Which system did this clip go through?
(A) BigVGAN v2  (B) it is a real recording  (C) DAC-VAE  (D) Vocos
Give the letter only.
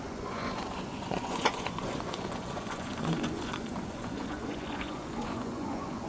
D